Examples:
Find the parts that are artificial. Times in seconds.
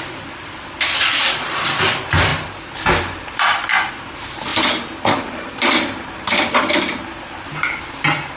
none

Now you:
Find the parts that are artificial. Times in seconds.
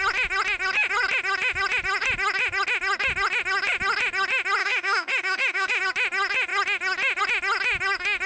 4.6-5.8 (autoencoder, DAC-VAE)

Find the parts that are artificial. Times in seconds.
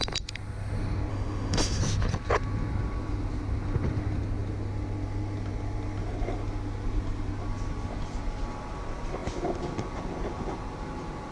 1.1-1.8 (autoencoder, DAC-VAE)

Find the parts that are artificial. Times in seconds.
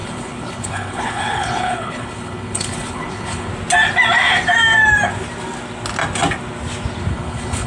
0.0-3.5 (codec, HILCodec); 7.1-7.7